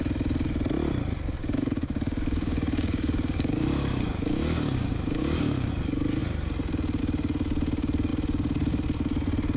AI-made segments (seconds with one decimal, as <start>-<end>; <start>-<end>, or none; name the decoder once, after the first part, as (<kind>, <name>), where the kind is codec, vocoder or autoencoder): 1.4-5.7 (codec, DAC)